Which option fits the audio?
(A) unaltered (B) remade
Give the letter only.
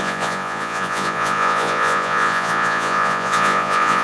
B